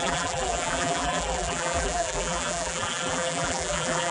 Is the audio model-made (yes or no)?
yes